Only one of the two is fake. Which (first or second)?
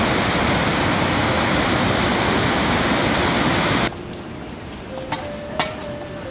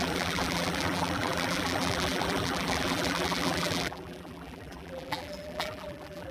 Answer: second